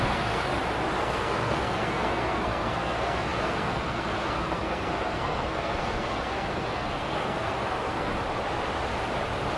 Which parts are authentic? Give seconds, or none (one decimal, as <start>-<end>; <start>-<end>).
0.5-1.0; 8.1-9.6